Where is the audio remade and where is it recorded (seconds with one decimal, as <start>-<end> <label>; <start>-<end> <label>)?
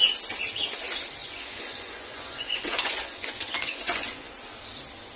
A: 0.0-1.2 recorded; 1.2-4.3 remade; 4.3-5.2 recorded